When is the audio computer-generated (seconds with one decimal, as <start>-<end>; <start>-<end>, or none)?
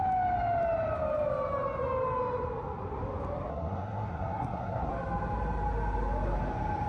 3.5-4.9